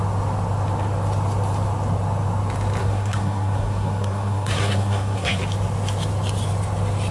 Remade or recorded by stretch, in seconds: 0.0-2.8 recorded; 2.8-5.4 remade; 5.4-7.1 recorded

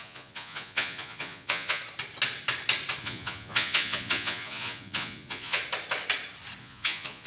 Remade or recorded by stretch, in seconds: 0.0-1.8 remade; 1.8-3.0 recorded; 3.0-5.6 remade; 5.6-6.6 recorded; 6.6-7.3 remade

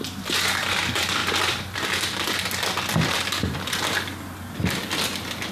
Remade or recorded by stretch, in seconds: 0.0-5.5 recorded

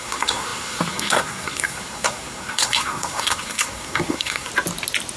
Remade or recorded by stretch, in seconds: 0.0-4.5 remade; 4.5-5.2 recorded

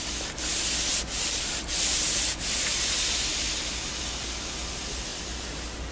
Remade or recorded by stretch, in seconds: 0.0-5.9 recorded

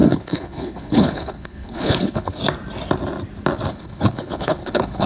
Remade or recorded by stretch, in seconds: 0.0-2.4 remade; 2.4-3.7 recorded; 3.7-5.1 remade